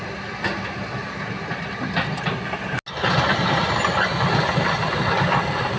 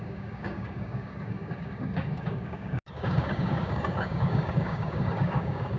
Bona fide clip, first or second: first